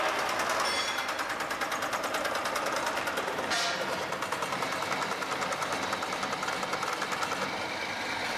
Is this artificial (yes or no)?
no